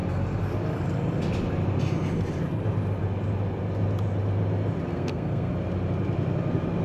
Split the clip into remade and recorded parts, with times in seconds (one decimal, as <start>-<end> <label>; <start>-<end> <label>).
0.0-4.9 recorded; 4.9-5.5 remade; 5.5-6.8 recorded